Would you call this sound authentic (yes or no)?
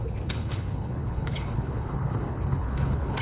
no